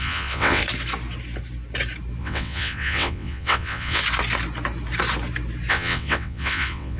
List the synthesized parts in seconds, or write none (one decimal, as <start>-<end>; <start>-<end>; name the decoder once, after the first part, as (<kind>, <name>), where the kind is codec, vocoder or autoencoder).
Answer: 0.0-0.6 (vocoder, WaveNeXt); 2.2-4.0; 5.7-7.0